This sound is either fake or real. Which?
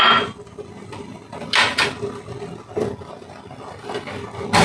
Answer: real